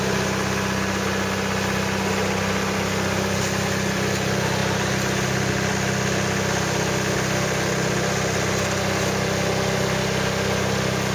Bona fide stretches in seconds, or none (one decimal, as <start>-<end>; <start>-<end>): 0.0-11.1